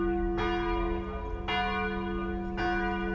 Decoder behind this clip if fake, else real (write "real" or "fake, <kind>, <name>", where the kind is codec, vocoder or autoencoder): real